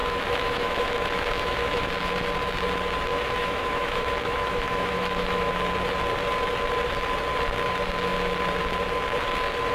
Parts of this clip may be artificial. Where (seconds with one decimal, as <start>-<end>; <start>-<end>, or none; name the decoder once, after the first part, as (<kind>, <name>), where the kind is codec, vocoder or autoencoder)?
0.0-1.9 (autoencoder, DAC-VAE); 3.1-5.6